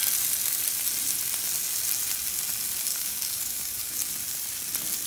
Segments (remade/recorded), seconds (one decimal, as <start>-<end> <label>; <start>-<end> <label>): 0.0-2.9 recorded; 2.9-4.1 remade; 4.1-5.1 recorded